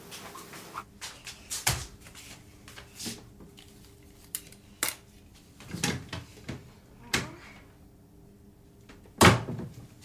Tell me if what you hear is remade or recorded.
recorded